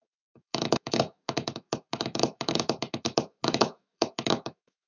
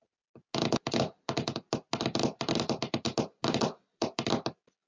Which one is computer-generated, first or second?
first